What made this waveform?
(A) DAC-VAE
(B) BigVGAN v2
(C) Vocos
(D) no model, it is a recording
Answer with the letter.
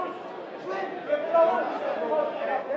D